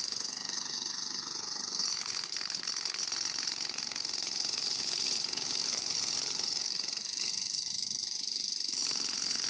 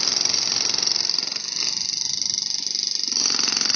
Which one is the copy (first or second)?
first